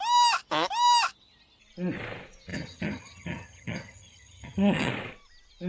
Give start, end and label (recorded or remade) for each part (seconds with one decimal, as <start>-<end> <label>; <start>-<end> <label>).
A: 0.0-2.5 recorded; 2.5-4.9 remade; 4.9-5.7 recorded